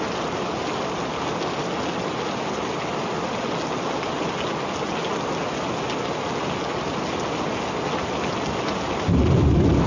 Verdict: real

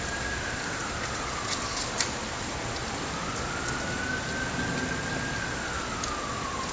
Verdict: real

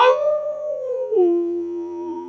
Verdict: fake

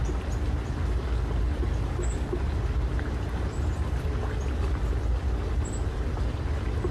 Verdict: real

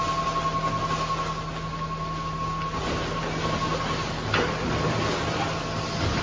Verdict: real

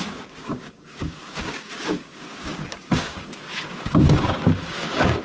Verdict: fake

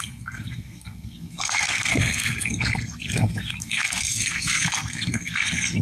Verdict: fake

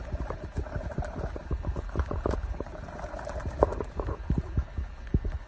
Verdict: real